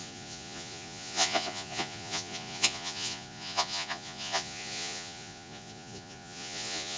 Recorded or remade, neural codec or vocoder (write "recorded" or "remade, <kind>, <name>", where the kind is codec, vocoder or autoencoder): remade, vocoder, Vocos